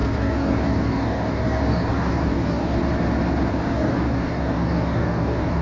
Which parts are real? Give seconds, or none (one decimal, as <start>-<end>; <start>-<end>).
2.8-3.5